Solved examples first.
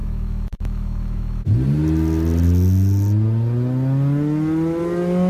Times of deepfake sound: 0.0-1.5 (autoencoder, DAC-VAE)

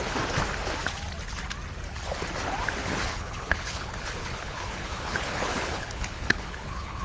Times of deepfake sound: 2.8-7.0 (codec, HILCodec)

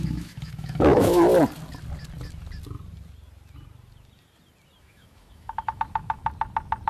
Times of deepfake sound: 0.0-1.3 (autoencoder, DAC-VAE); 4.8-6.2

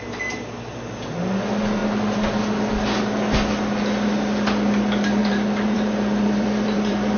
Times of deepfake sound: 5.2-7.2 (vocoder, BigVGAN v2)

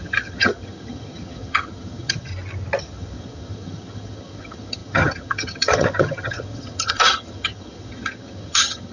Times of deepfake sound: 0.0-2.3 (vocoder, HiFi-GAN); 2.8-8.9